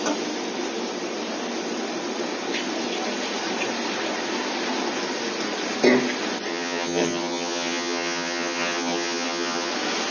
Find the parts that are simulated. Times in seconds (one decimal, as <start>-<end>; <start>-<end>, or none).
6.5-9.7